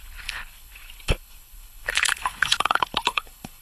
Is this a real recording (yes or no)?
no